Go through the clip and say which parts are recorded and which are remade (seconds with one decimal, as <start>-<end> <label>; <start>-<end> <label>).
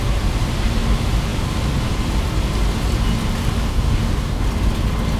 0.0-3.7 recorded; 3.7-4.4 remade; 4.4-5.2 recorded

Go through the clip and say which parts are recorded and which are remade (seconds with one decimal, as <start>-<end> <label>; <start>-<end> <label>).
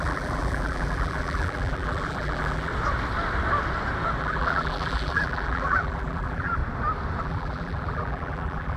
0.0-2.7 remade; 2.7-4.2 recorded; 4.2-6.6 remade; 6.6-7.2 recorded; 7.2-8.8 remade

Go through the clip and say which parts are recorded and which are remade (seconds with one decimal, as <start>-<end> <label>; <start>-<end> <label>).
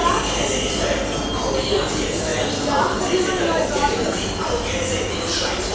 0.0-5.7 recorded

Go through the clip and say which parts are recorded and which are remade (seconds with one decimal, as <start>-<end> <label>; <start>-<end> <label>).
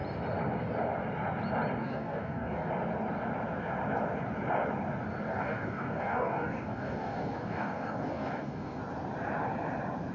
0.0-1.8 recorded; 1.8-2.7 remade; 2.7-5.3 recorded; 5.3-8.8 remade; 8.8-10.1 recorded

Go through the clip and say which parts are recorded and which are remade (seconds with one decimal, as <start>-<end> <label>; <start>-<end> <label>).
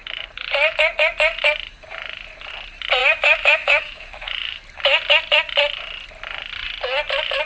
0.0-3.0 recorded; 3.0-4.3 remade; 4.3-7.5 recorded